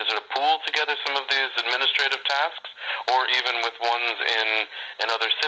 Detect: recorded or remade recorded